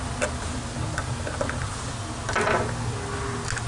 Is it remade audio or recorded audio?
recorded